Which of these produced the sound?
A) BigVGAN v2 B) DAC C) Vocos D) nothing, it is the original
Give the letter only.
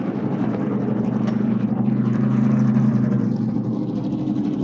A